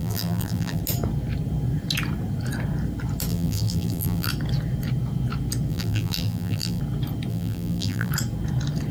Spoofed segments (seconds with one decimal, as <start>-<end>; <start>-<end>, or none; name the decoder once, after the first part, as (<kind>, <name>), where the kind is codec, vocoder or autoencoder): 0.0-0.8 (vocoder, BigVGAN v2); 3.3-4.3; 5.7-6.8; 7.3-8.1

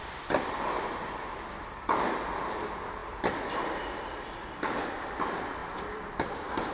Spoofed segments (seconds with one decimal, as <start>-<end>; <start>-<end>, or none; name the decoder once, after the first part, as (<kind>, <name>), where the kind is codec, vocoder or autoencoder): 5.6-6.7 (vocoder, BigVGAN v2)

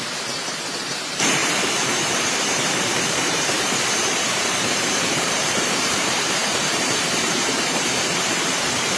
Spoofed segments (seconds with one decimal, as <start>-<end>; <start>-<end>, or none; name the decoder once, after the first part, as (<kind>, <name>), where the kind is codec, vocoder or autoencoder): 0.0-1.4 (vocoder, BigVGAN v2); 2.0-9.0

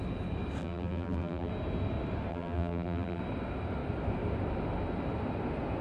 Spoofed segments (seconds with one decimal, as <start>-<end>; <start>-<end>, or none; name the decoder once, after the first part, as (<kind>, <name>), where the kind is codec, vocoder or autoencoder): 0.6-1.5 (vocoder, BigVGAN v2); 2.3-3.2

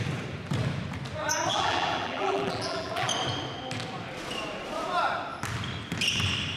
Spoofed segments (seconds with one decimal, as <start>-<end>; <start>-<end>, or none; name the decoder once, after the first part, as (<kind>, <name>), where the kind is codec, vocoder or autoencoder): 1.5-3.1 (vocoder, BigVGAN v2)

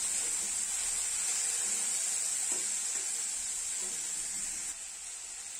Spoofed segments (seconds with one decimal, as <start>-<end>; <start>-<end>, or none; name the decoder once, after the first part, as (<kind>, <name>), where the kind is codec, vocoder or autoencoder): none